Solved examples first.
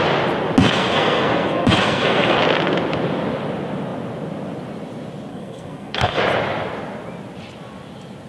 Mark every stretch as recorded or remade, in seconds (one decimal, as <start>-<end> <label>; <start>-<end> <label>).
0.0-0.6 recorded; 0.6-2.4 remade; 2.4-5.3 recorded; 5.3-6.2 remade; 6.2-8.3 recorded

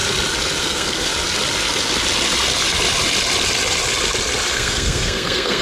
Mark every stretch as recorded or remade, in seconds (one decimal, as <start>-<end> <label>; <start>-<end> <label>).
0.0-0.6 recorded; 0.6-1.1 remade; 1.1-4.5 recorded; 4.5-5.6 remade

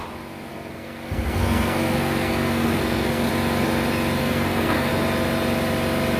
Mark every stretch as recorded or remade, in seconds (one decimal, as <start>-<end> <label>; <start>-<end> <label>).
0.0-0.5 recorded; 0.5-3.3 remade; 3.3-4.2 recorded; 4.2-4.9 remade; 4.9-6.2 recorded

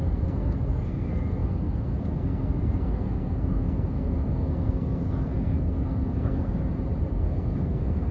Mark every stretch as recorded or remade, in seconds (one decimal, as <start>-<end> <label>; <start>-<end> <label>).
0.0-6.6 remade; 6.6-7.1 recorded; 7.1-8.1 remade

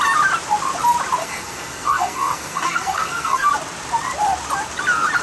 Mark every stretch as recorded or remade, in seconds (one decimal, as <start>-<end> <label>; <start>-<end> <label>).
0.0-1.2 recorded; 1.2-3.5 remade; 3.5-5.2 recorded

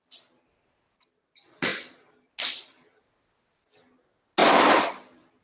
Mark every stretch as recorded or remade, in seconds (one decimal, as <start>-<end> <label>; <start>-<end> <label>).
0.0-5.4 recorded

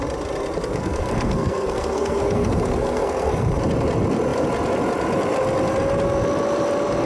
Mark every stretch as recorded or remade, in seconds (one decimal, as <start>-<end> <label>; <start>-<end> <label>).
0.0-0.7 recorded; 0.7-3.6 remade; 3.6-7.1 recorded